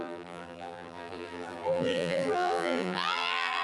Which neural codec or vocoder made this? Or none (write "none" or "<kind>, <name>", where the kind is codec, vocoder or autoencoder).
vocoder, BigVGAN v2